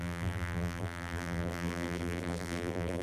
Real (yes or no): no